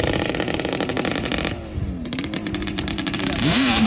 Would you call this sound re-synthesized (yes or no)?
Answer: yes